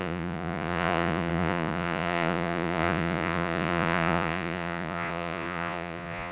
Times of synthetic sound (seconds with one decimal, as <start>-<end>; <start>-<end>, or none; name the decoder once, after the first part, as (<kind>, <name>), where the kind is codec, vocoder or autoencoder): 0.0-6.3 (vocoder, Vocos)